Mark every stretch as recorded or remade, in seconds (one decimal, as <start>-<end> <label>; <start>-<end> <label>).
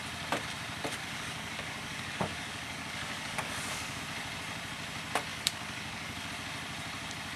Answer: 0.0-1.0 recorded; 1.0-4.0 remade; 4.0-5.3 recorded; 5.3-6.3 remade; 6.3-7.4 recorded